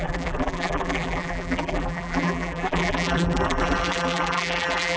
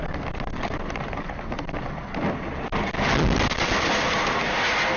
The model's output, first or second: first